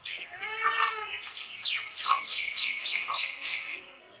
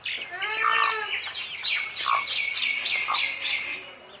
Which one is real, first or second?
second